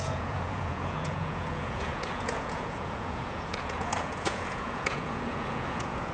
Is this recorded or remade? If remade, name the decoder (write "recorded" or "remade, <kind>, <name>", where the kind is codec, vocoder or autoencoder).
remade, vocoder, Vocos